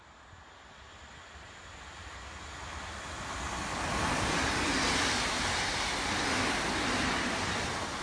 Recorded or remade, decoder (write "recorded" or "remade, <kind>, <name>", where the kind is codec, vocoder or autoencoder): recorded